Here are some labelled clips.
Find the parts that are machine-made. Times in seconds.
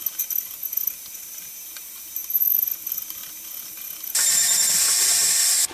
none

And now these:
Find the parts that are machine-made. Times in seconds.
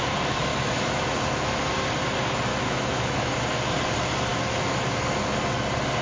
0.5-1.1 (autoencoder, DAC-VAE); 2.5-3.3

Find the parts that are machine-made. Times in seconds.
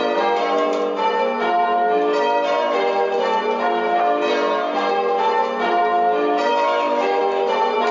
6.5-7.2 (autoencoder, DAC-VAE)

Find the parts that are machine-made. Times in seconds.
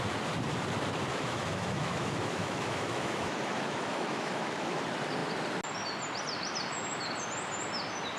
1.1-4.8 (autoencoder, DAC-VAE)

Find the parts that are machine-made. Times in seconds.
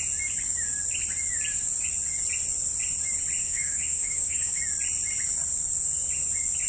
3.4-4.6 (autoencoder, DAC-VAE)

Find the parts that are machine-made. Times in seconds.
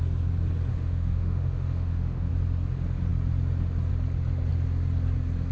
0.7-2.3 (autoencoder, DAC-VAE)